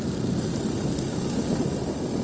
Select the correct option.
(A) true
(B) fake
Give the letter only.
A